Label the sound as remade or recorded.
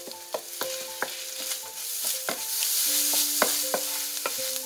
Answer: recorded